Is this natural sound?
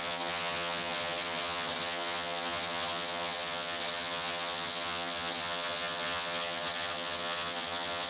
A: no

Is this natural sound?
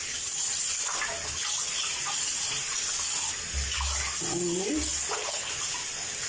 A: yes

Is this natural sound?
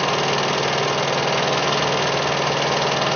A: yes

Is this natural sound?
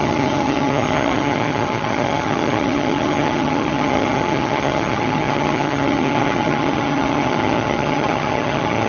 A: no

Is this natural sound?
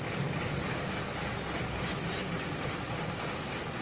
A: yes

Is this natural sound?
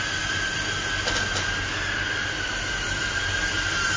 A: yes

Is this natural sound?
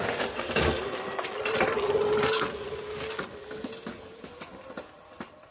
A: yes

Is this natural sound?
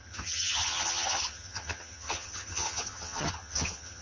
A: no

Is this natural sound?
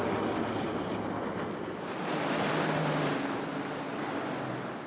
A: yes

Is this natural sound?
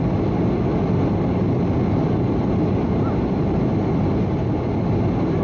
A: yes